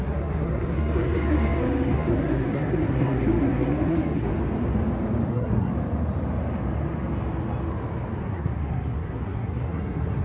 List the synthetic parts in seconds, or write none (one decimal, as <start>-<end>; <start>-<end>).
0.0-4.3; 5.3-5.7; 8.2-10.2